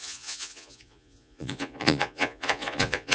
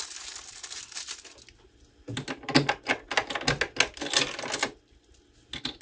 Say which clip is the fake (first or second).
first